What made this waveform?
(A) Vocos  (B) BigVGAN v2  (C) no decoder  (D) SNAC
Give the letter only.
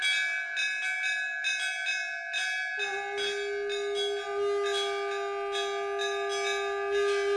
C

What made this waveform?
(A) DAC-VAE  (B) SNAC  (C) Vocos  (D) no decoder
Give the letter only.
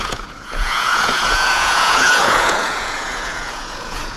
C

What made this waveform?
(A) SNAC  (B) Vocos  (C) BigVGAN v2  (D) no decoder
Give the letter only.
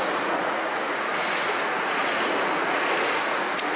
B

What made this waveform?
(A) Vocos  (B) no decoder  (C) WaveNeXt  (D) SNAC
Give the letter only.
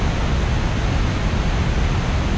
B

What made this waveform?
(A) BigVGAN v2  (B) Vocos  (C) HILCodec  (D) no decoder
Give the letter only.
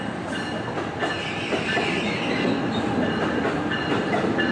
D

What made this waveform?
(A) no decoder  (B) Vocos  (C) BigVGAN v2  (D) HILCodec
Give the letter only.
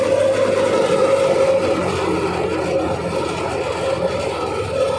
A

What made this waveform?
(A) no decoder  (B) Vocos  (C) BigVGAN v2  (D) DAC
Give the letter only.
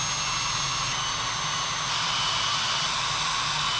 A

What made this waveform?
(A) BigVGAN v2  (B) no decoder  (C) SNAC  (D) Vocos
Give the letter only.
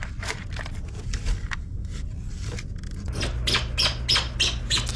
B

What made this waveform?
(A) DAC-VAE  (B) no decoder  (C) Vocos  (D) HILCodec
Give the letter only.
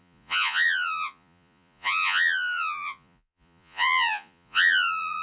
C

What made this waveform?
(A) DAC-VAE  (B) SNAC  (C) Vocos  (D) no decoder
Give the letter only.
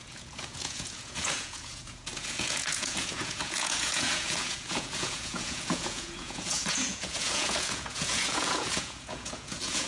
C